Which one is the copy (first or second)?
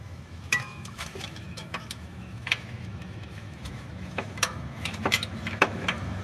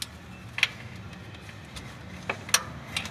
first